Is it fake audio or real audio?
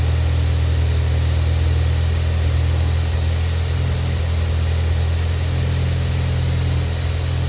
real